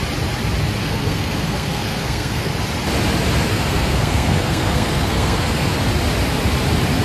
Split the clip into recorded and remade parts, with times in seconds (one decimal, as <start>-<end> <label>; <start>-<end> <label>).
0.0-0.8 recorded; 0.8-2.5 remade; 2.5-3.5 recorded; 3.5-5.7 remade; 5.7-7.0 recorded